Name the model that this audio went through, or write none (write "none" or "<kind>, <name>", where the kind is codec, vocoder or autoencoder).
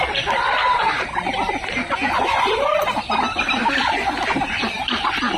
none